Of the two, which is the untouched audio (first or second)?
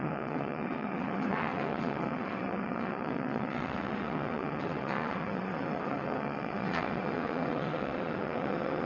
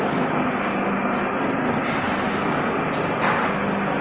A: second